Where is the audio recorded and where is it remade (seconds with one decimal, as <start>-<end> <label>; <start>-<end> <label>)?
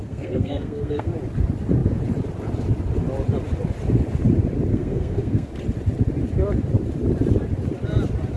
0.0-1.1 remade; 1.1-4.7 recorded; 4.7-5.5 remade; 5.5-8.4 recorded